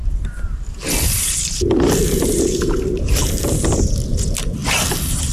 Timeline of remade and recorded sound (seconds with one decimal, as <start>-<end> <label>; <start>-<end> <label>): 0.0-3.2 remade; 3.2-4.6 recorded; 4.6-5.3 remade